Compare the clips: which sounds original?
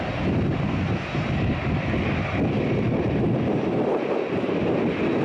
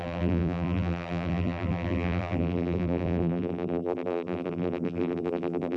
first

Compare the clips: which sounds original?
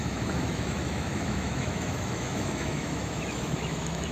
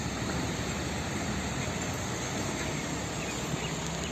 second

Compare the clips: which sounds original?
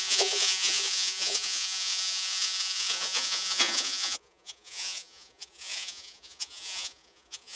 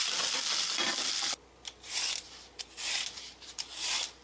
second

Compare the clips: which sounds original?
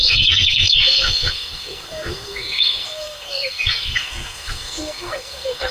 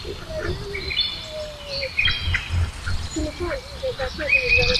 second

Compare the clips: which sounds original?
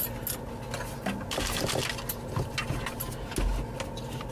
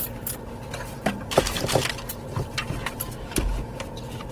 first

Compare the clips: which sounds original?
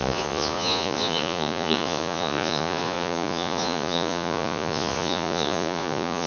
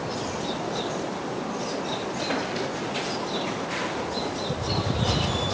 second